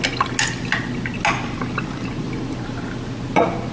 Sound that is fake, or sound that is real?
real